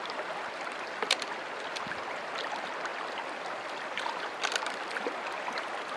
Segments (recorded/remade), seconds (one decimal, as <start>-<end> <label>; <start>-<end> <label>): 0.0-6.0 recorded